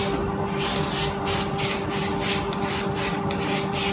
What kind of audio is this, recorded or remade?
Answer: recorded